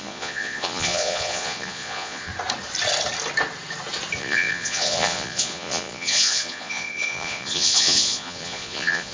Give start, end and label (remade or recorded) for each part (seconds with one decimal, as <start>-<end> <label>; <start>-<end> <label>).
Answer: 0.0-2.3 remade; 2.3-4.2 recorded; 4.2-9.1 remade